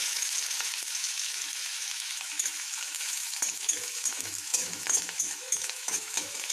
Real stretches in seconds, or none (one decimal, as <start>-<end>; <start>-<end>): none